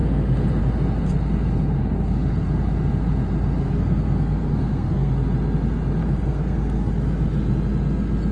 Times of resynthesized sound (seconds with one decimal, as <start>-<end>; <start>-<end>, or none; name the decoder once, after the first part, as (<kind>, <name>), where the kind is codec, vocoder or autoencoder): 3.6-5.1 (codec, SNAC); 6.3-6.9